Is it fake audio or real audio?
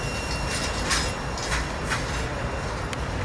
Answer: real